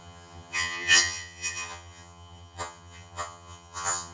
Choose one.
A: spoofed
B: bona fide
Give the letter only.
A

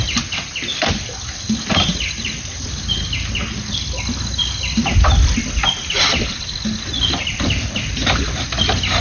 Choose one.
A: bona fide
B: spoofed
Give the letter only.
A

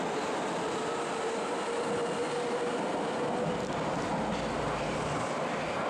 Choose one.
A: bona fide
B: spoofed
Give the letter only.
A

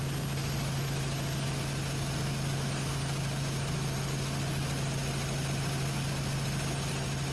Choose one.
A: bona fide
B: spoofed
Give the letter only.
A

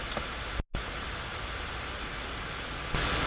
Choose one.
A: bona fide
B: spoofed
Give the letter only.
A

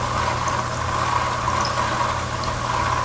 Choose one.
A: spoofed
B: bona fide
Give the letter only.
B